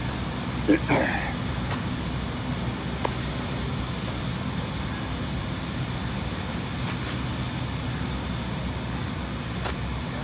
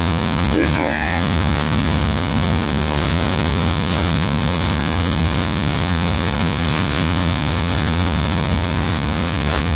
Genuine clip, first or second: first